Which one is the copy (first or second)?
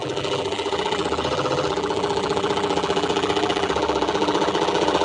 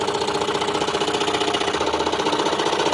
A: first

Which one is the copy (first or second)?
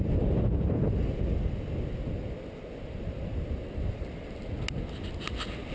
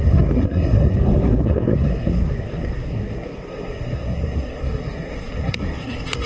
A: second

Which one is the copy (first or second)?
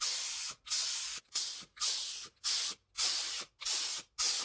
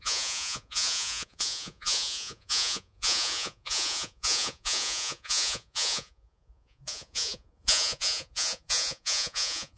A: second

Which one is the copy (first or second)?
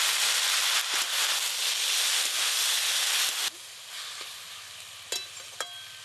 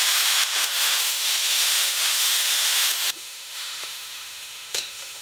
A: second